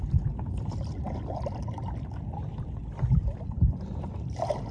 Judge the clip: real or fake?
real